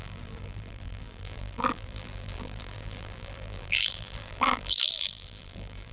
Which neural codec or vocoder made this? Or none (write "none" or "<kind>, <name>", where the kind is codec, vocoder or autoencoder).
vocoder, BigVGAN v2